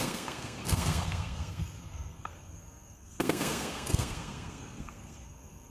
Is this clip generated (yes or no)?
yes